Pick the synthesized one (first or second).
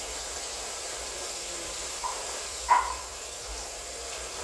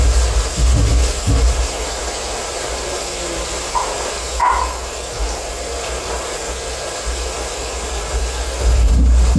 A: first